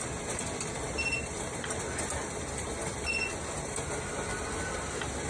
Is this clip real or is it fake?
real